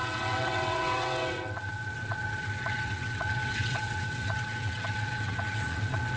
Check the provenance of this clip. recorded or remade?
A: remade